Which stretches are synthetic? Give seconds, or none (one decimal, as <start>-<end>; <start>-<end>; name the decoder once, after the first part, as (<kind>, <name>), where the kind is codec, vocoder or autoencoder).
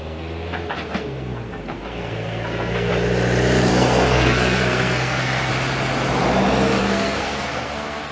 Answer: 0.0-2.9 (codec, SNAC); 3.7-5.5; 6.8-8.1